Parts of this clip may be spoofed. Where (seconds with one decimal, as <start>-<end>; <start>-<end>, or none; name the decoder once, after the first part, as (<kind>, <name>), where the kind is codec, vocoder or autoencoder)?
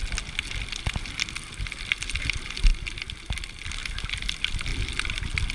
none